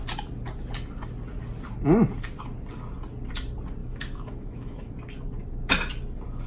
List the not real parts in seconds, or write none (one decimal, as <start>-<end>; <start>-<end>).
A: 3.8-4.9